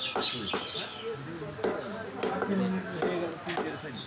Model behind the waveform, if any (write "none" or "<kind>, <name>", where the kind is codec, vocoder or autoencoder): none